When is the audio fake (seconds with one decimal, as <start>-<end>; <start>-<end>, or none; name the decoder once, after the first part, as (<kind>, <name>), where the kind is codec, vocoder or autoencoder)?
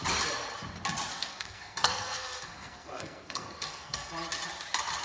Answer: 1.1-4.1 (codec, SNAC)